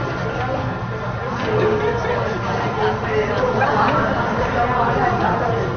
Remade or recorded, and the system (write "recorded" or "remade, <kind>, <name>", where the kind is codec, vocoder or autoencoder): recorded